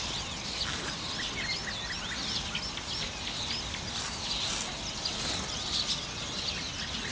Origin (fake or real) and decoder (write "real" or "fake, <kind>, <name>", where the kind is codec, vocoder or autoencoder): real